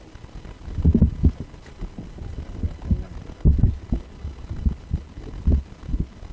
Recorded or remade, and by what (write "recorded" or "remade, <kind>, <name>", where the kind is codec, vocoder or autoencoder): recorded